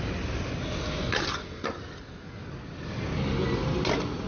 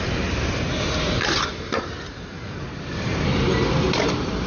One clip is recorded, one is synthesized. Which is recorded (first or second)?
first